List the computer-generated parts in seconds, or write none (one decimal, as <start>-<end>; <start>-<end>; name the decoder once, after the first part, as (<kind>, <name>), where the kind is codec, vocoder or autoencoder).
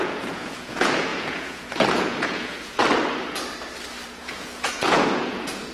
0.0-2.8 (vocoder, Vocos); 4.1-5.7